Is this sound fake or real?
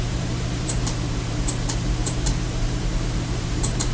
fake